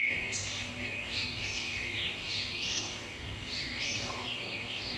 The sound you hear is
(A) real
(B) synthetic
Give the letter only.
B